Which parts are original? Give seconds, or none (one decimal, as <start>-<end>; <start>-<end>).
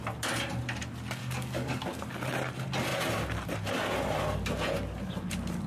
0.0-1.2; 1.8-5.7